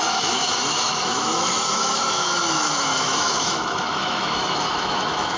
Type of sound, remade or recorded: remade